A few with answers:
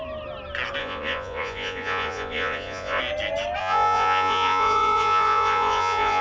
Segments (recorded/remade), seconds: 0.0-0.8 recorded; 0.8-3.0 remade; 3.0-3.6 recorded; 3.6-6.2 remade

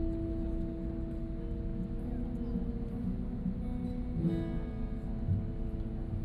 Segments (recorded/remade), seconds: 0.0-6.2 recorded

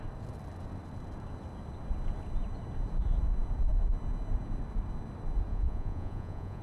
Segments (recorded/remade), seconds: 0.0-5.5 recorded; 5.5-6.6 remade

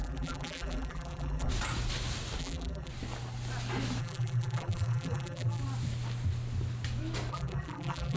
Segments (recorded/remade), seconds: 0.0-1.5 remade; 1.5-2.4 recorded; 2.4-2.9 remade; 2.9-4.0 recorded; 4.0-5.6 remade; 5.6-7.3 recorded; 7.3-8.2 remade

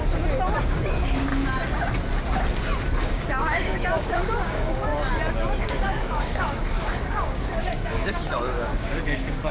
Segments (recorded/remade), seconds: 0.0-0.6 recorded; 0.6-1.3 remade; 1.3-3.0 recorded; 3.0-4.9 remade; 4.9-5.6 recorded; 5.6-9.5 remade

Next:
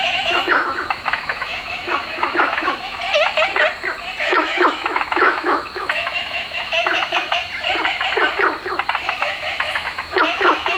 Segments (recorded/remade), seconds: 0.0-3.0 remade; 3.0-4.2 recorded; 4.2-7.4 remade; 7.4-9.2 recorded; 9.2-10.8 remade

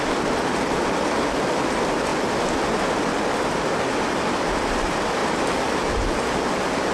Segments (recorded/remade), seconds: 0.0-5.2 remade; 5.2-6.1 recorded; 6.1-6.9 remade

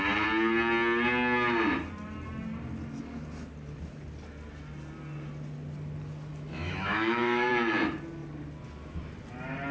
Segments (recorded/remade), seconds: 0.0-6.3 recorded; 6.3-7.5 remade; 7.5-9.7 recorded